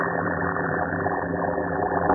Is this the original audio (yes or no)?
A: no